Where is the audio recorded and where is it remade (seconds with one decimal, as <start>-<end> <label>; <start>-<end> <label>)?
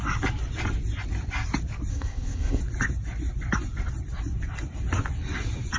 0.0-1.9 recorded; 1.9-2.6 remade; 2.6-5.8 recorded